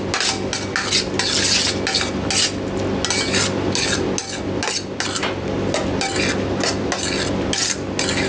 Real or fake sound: real